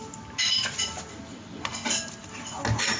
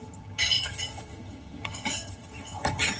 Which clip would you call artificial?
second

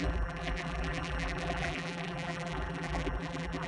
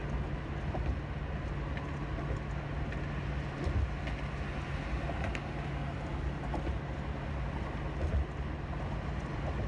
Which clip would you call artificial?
first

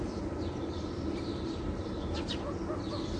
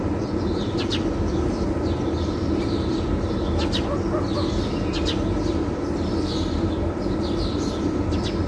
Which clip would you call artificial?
first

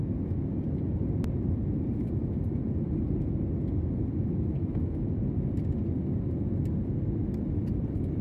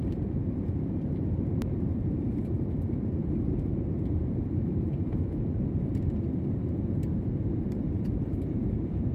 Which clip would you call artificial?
second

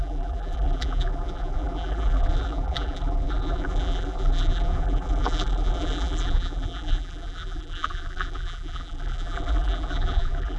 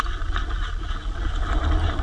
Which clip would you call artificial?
first